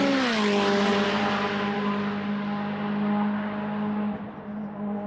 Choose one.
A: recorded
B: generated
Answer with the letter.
A